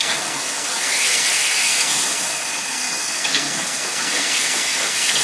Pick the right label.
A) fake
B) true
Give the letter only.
A